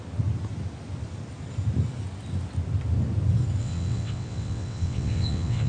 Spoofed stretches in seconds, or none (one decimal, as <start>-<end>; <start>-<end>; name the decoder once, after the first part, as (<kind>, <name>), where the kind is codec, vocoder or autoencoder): 3.6-5.7 (vocoder, WaveNeXt)